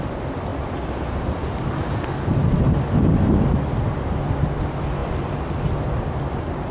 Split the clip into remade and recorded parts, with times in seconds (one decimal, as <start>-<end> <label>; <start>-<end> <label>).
0.0-6.7 recorded